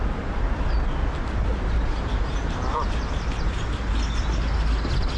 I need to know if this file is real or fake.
real